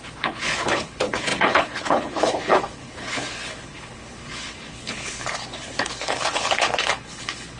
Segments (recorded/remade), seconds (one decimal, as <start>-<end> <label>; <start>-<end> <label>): 0.0-7.6 remade